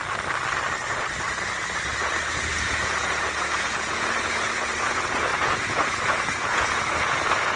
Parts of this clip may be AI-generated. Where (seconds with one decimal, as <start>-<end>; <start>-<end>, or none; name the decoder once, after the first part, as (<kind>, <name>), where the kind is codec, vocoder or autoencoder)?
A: 2.0-7.6 (vocoder, Vocos)